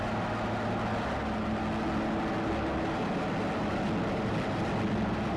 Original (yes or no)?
yes